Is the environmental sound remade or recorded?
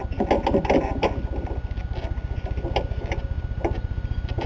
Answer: recorded